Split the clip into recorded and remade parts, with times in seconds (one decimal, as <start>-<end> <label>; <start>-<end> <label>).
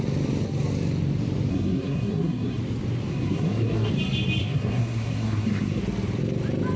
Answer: 0.0-1.5 recorded; 1.5-2.6 remade; 2.6-3.1 recorded; 3.1-3.9 remade; 3.9-4.4 recorded; 4.4-5.8 remade; 5.8-6.8 recorded